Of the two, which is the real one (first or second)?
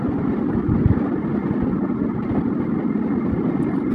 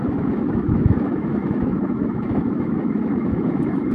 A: first